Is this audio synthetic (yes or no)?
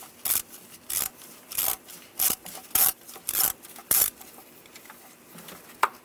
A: yes